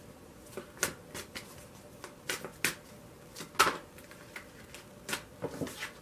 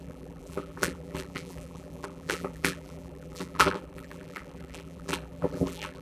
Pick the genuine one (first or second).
first